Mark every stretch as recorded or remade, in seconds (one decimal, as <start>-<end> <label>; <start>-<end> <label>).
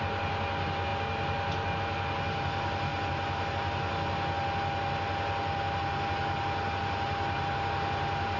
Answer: 0.0-8.4 recorded